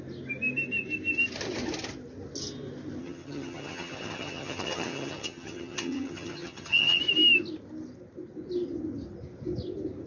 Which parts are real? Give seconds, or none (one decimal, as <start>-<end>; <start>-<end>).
0.0-3.0; 7.0-10.1